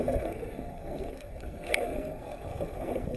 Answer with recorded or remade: remade